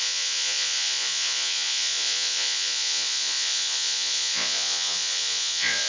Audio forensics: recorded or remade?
remade